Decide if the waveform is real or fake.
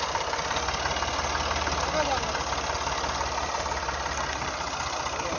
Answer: real